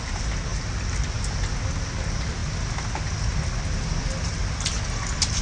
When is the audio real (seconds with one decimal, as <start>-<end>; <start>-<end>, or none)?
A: 0.0-5.4